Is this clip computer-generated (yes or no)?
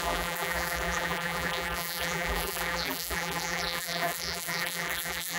yes